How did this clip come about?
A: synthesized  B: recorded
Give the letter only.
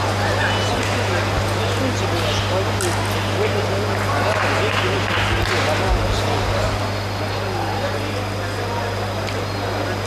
B